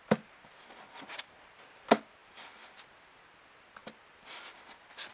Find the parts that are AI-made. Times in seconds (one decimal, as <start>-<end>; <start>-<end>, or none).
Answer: none